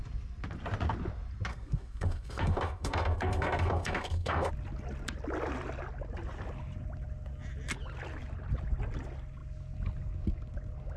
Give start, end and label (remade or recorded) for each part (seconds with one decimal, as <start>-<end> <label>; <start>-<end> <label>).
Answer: 0.0-1.5 recorded; 1.5-4.5 remade; 4.5-11.0 recorded